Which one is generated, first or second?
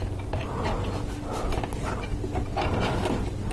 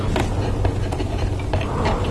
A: second